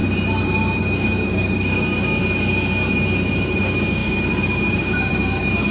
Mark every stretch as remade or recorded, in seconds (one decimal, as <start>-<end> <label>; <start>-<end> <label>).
0.0-0.8 recorded; 0.8-2.2 remade; 2.2-3.3 recorded; 3.3-5.7 remade